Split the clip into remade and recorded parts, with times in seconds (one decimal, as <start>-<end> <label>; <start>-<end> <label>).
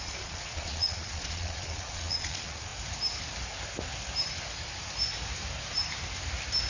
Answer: 0.0-2.7 remade; 2.7-6.7 recorded